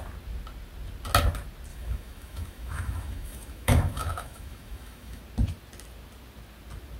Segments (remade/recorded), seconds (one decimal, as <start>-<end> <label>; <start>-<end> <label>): 0.0-1.7 recorded; 1.7-5.2 remade; 5.2-7.0 recorded